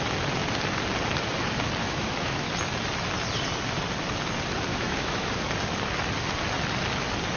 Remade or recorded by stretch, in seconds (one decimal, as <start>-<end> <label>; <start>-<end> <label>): 0.0-1.8 recorded; 1.8-2.5 remade; 2.5-4.7 recorded; 4.7-5.3 remade; 5.3-7.4 recorded